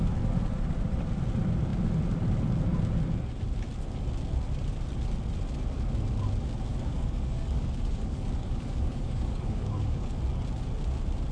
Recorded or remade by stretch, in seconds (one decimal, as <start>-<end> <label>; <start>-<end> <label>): 0.0-6.7 recorded; 6.7-10.2 remade; 10.2-11.3 recorded